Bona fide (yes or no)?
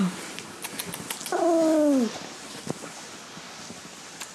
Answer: yes